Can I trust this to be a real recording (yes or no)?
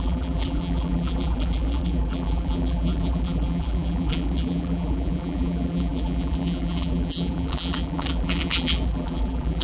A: no